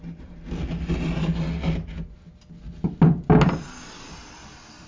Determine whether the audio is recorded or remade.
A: recorded